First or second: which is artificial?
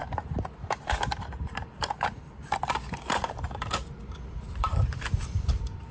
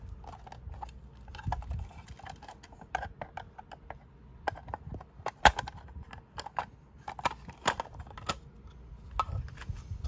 first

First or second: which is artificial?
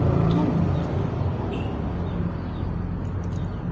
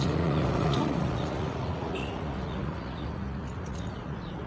second